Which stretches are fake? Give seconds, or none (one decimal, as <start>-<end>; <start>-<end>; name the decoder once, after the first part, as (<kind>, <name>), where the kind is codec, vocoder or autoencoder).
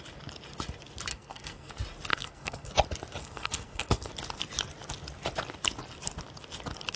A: 1.1-1.7 (codec, SNAC); 2.1-2.7; 3.2-4.1